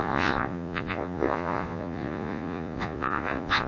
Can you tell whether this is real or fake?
fake